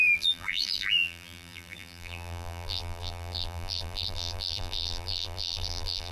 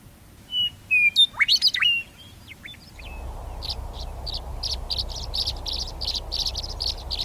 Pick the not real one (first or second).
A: first